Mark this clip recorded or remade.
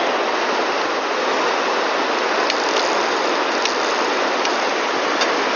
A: recorded